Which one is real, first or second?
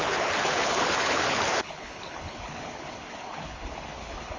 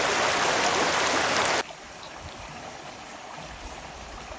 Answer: second